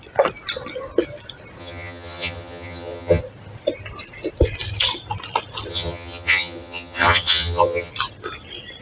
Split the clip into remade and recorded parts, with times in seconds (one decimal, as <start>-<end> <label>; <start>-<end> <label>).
0.0-1.6 recorded; 1.6-3.2 remade; 3.2-5.7 recorded; 5.7-7.9 remade; 7.9-8.8 recorded

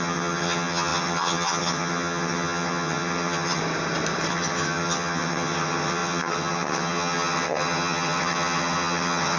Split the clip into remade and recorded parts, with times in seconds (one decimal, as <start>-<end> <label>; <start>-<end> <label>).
0.0-3.6 remade; 3.6-4.3 recorded; 4.3-9.4 remade

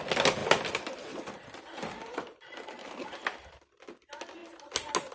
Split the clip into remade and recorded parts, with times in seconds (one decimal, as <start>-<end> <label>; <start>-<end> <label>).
0.0-5.1 recorded

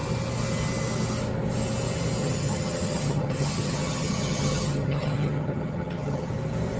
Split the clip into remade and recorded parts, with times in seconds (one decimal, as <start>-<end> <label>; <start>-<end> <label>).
0.0-2.2 recorded; 2.2-6.3 remade; 6.3-6.8 recorded

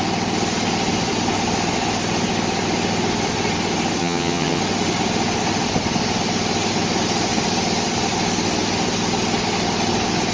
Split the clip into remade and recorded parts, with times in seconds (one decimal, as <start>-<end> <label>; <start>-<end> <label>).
0.0-4.0 recorded; 4.0-4.6 remade; 4.6-10.3 recorded

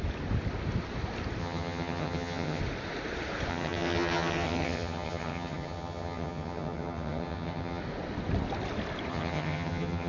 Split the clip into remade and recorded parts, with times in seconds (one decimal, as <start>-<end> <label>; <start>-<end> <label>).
0.0-1.4 recorded; 1.4-2.6 remade; 2.6-3.5 recorded; 3.5-7.8 remade; 7.8-9.1 recorded; 9.1-10.1 remade